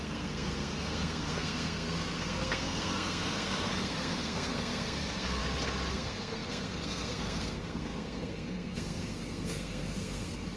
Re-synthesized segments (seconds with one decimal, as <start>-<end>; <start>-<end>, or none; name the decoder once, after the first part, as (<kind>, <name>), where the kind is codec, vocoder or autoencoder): 0.0-5.4 (codec, SNAC); 5.9-10.6